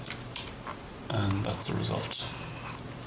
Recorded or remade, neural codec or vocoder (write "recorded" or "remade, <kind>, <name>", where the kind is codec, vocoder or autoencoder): recorded